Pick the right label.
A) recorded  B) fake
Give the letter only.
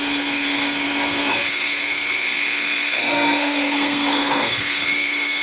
B